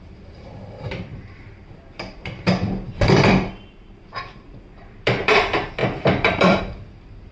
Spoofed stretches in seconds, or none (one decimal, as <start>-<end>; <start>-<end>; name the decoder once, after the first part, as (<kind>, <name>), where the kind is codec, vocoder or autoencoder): 0.0-7.3 (vocoder, BigVGAN v2)